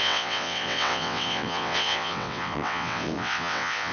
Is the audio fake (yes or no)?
yes